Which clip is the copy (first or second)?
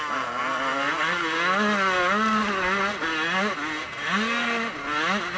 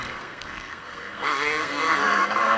second